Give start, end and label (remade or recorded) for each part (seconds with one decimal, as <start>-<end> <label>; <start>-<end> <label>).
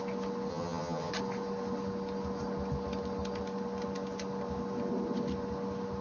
0.0-0.5 recorded; 0.5-1.1 remade; 1.1-6.0 recorded